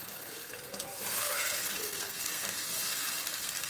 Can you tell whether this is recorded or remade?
remade